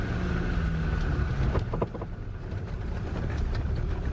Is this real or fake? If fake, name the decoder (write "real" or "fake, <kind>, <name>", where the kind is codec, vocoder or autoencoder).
real